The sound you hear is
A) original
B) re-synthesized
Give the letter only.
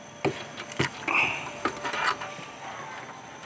A